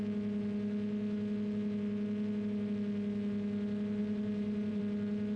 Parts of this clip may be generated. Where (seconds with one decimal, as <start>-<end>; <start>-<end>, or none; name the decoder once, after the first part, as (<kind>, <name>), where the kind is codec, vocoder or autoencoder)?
4.0-4.8 (vocoder, BigVGAN v2)